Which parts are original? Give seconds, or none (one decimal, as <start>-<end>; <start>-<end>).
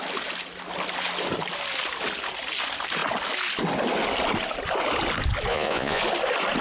0.0-5.5; 6.0-6.6